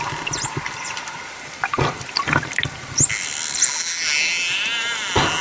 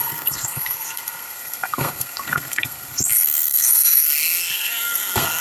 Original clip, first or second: first